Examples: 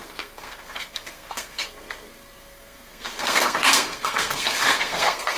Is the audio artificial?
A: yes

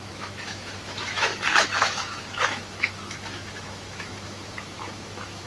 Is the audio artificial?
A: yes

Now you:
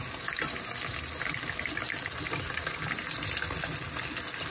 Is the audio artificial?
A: no